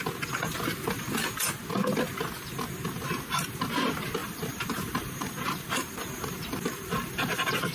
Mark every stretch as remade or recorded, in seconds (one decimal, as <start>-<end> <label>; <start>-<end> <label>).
0.0-4.2 recorded; 4.2-7.7 remade